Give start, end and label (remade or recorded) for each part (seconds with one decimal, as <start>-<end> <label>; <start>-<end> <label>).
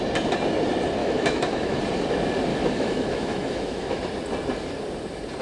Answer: 0.0-1.0 recorded; 1.0-1.8 remade; 1.8-2.5 recorded; 2.5-4.0 remade; 4.0-5.4 recorded